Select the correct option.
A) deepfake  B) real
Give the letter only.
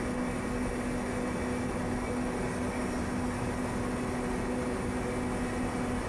B